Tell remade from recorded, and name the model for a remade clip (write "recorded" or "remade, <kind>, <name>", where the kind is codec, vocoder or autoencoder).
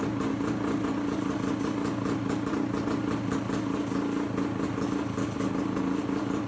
recorded